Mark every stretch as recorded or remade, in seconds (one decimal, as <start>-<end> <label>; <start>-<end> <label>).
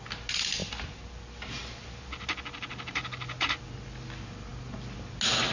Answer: 0.0-5.5 recorded